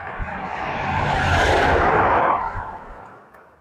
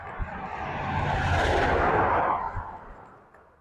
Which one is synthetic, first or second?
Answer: first